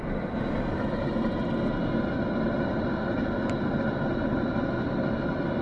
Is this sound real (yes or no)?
yes